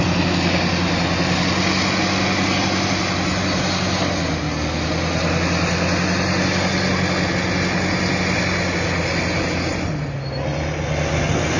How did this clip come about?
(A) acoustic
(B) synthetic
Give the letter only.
A